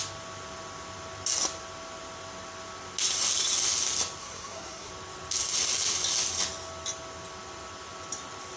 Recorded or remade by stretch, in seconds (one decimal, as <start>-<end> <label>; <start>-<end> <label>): 0.0-4.2 recorded; 4.2-4.9 remade; 4.9-8.6 recorded